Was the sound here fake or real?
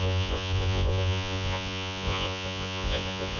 fake